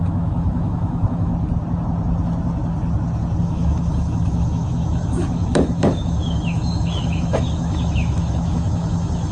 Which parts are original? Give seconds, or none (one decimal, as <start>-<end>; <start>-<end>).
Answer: 1.3-3.4